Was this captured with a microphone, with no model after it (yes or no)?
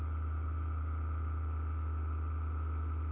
yes